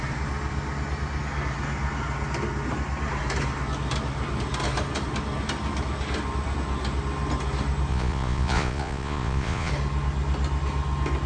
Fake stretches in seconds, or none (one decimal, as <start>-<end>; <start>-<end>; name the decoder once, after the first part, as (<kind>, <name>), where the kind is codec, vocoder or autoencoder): 7.9-9.7 (vocoder, Vocos)